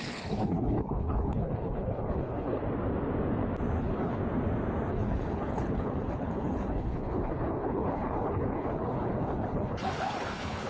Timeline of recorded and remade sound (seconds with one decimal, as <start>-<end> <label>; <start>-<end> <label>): 0.0-2.6 remade; 2.6-3.8 recorded; 3.8-4.2 remade; 4.2-4.9 recorded; 4.9-10.7 remade